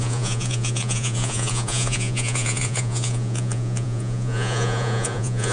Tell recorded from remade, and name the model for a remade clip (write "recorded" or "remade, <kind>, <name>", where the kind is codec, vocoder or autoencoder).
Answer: remade, vocoder, Vocos